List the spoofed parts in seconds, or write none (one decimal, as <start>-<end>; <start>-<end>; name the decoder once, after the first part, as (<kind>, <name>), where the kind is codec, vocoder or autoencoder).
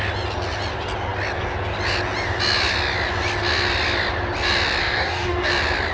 4.8-5.5 (codec, DAC)